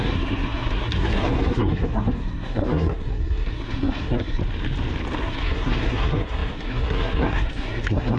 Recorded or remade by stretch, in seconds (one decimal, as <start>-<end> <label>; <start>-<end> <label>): 0.0-4.4 remade; 4.4-5.2 recorded; 5.2-8.2 remade